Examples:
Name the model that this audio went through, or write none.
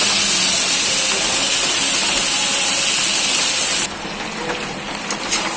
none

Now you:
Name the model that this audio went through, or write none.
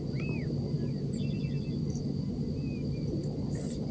none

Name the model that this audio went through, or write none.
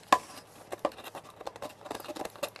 none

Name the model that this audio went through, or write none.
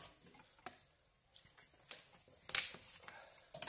none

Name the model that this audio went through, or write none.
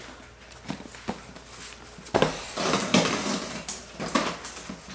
none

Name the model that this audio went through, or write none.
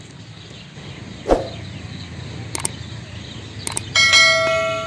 none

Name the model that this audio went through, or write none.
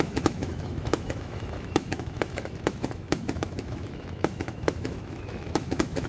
autoencoder, DAC-VAE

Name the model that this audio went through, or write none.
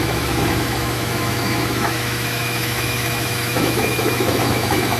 autoencoder, DAC-VAE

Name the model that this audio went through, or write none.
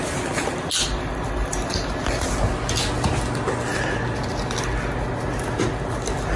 none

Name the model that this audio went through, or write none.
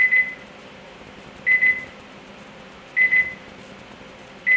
none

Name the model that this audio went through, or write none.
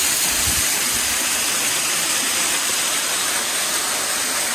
none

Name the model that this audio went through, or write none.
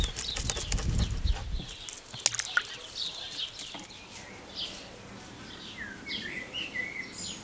none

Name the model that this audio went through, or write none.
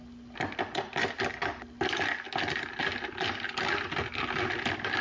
none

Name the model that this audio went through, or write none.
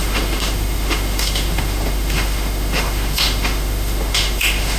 autoencoder, DAC-VAE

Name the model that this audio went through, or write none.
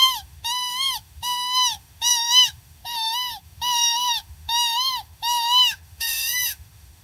autoencoder, DAC-VAE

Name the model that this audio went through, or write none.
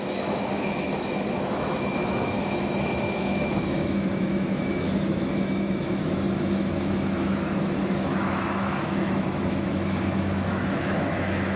autoencoder, DAC-VAE